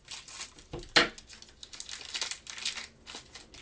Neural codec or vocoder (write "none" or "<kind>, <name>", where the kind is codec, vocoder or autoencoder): none